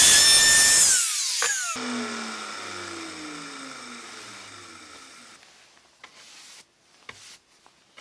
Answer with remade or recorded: recorded